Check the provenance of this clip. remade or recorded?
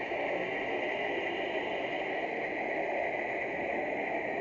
recorded